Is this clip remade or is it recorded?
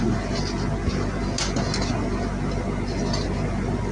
recorded